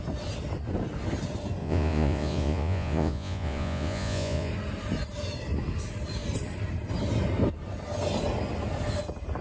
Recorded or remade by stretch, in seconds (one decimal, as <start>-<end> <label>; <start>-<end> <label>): 0.0-1.6 recorded; 1.6-4.5 remade; 4.5-9.4 recorded